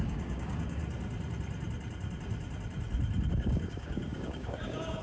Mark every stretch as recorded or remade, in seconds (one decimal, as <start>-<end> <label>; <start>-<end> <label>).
0.0-0.8 remade; 0.8-3.3 recorded; 3.3-5.0 remade